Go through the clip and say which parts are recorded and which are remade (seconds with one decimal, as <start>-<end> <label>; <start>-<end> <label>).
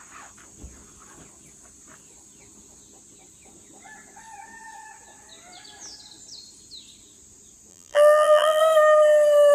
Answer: 0.0-7.7 recorded; 7.7-8.6 remade; 8.6-9.5 recorded